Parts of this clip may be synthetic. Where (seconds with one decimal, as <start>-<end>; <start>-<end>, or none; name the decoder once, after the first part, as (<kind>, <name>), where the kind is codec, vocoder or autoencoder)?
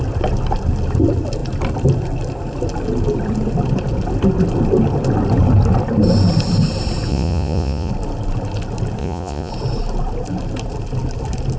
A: 7.1-7.9 (vocoder, Vocos); 9.0-9.5